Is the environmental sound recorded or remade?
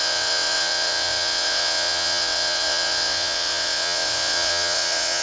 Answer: remade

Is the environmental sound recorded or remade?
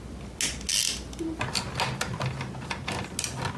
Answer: recorded